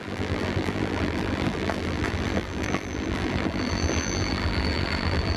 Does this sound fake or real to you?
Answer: fake